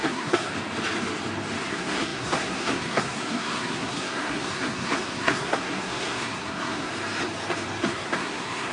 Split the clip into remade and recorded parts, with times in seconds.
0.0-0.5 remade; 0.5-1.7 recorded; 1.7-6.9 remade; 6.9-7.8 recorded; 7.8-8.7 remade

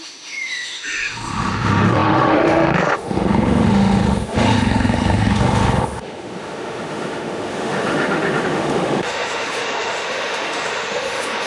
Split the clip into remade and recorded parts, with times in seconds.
0.0-11.5 remade